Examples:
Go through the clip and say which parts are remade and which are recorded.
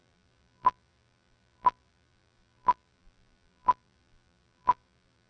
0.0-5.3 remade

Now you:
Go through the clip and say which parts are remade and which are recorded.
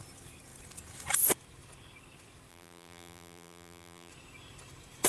0.0-2.5 recorded; 2.5-4.1 remade; 4.1-5.1 recorded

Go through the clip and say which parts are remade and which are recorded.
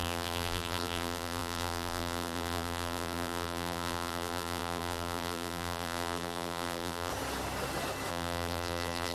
0.0-7.1 remade; 7.1-8.1 recorded; 8.1-9.1 remade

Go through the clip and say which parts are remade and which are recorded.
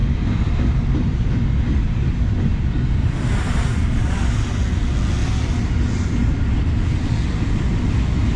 0.0-3.0 recorded; 3.0-4.4 remade; 4.4-8.4 recorded